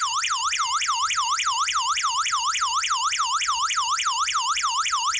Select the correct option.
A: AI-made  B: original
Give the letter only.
B